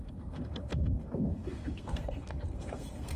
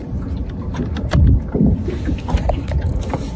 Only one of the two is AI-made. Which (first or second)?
first